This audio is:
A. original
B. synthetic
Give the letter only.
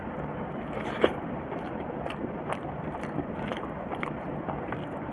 A